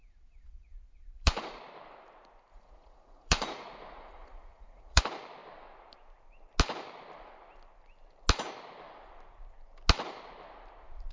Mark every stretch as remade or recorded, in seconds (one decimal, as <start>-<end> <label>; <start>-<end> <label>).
0.0-1.6 remade; 1.6-2.5 recorded; 2.5-5.0 remade; 5.0-11.1 recorded